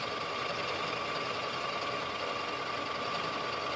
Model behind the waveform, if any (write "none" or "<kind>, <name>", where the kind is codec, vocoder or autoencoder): none